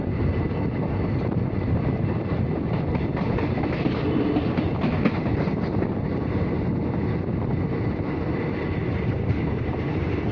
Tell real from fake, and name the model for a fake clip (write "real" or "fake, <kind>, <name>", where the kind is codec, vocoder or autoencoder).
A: real